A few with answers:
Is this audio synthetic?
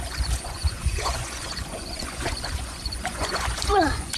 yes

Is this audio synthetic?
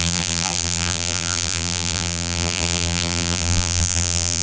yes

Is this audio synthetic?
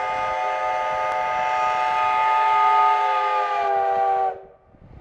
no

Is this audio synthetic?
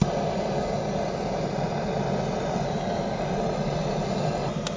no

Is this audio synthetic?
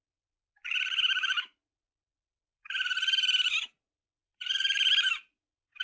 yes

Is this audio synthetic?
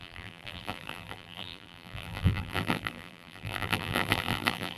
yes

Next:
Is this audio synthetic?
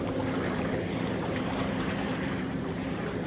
yes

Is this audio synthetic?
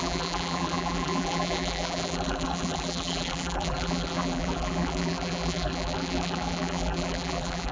yes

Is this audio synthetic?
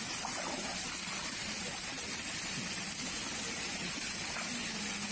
no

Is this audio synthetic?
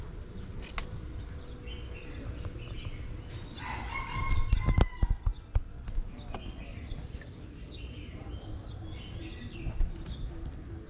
no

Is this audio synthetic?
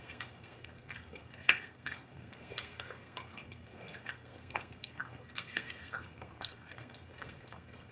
yes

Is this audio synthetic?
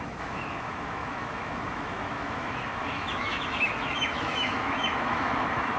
yes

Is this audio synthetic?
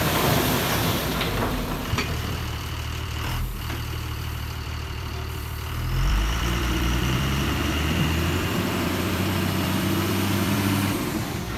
yes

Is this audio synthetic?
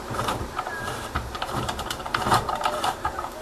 yes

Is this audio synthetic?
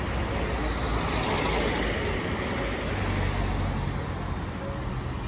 no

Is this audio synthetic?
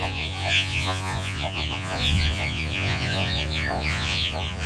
yes